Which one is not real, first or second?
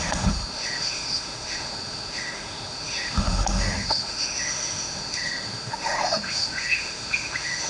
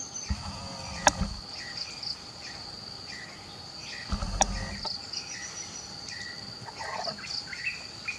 first